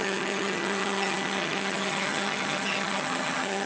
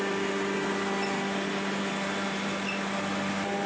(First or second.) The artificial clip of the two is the first